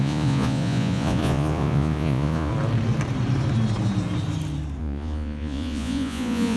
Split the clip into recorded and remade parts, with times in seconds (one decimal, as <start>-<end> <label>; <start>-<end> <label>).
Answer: 0.0-2.5 remade; 2.5-4.8 recorded; 4.8-6.6 remade